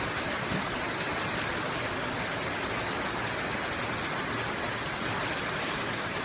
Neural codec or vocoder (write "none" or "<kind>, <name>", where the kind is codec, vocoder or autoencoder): none